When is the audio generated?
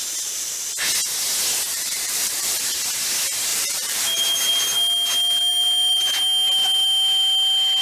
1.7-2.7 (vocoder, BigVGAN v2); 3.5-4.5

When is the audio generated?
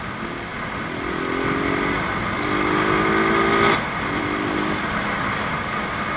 none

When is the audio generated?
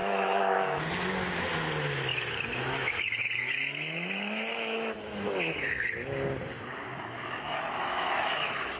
0.0-0.8 (autoencoder, DAC-VAE); 2.1-5.9; 6.9-8.8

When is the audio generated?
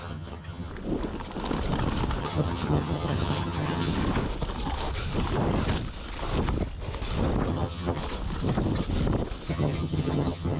0.0-0.7 (vocoder, HiFi-GAN); 2.2-3.9; 7.5-8.0; 9.5-10.6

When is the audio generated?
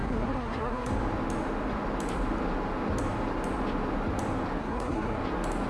0.0-0.9 (codec, SNAC); 4.6-5.2